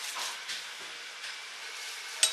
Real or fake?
real